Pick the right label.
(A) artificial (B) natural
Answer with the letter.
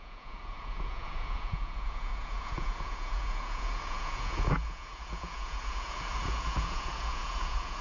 A